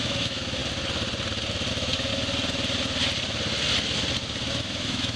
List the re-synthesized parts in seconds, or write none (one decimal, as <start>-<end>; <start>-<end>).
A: 0.0-0.6; 1.7-2.1; 4.5-5.2